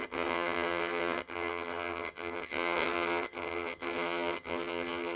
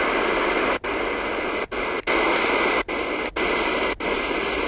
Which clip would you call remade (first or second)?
first